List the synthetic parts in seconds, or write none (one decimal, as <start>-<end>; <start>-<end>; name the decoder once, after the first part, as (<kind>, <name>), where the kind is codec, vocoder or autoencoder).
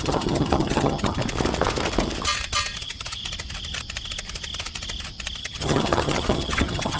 0.0-1.2 (vocoder, HiFi-GAN); 2.8-3.2; 5.4-7.0